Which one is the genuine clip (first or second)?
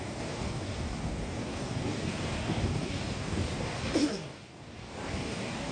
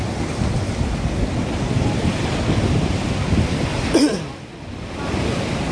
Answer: second